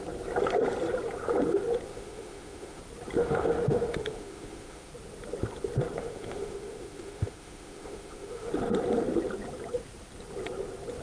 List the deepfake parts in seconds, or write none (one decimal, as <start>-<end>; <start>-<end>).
1.9-2.8; 3.2-4.9; 6.0-8.5